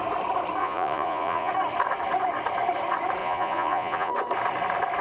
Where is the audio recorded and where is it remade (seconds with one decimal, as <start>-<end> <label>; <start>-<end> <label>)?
0.0-0.6 recorded; 0.6-1.5 remade; 1.5-3.2 recorded; 3.2-4.1 remade; 4.1-5.0 recorded